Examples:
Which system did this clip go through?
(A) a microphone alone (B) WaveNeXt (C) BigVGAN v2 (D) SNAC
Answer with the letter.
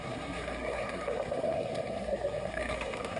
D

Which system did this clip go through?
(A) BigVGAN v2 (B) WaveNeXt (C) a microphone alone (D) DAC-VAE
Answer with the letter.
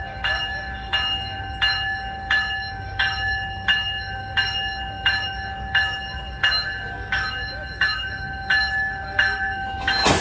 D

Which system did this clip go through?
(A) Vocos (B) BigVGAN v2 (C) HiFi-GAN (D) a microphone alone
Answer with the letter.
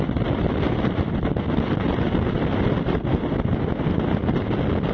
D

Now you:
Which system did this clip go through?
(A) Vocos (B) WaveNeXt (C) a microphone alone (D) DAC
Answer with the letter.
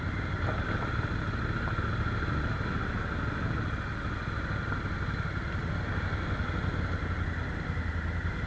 C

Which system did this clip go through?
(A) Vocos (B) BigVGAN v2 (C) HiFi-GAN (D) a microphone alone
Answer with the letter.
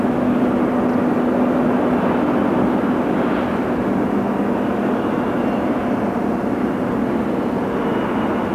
D